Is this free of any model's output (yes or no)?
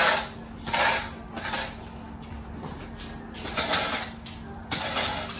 yes